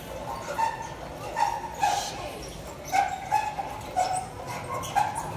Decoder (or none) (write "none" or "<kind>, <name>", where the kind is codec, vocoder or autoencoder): none